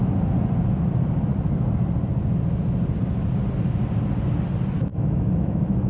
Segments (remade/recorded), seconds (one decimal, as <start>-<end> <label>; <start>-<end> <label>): 0.0-4.9 recorded; 4.9-5.9 remade

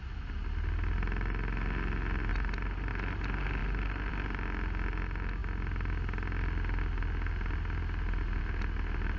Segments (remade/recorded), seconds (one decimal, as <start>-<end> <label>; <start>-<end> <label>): 0.0-2.3 recorded; 2.3-2.9 remade; 2.9-9.2 recorded